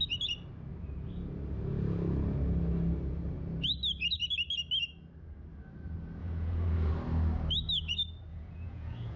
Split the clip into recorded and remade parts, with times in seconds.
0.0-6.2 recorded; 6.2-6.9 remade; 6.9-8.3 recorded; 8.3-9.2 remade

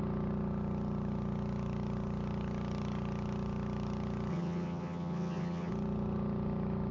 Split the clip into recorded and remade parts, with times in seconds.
0.0-4.3 recorded; 4.3-5.7 remade; 5.7-6.9 recorded

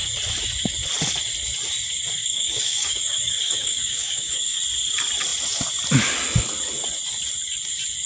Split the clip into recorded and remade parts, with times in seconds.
0.0-2.2 recorded; 2.2-4.6 remade; 4.6-8.1 recorded

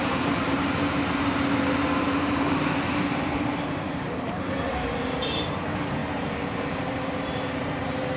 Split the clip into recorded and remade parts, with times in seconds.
0.0-8.2 remade

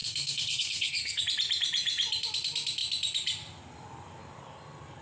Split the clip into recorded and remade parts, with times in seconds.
0.0-1.2 remade; 1.2-5.0 recorded

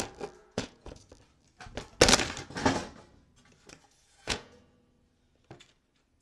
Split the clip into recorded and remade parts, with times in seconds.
0.0-0.4 recorded; 0.4-1.1 remade; 1.1-4.0 recorded; 4.0-4.6 remade; 4.6-6.2 recorded

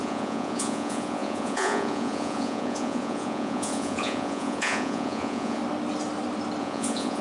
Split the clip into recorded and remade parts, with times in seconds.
0.0-5.6 remade; 5.6-6.6 recorded; 6.6-7.2 remade

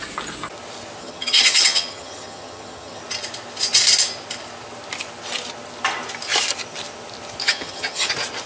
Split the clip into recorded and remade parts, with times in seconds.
0.0-1.0 recorded; 1.0-3.0 remade; 3.0-7.4 recorded; 7.4-8.1 remade; 8.1-8.5 recorded